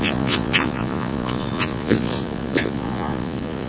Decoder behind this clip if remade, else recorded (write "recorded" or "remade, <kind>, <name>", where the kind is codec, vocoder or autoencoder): remade, vocoder, Vocos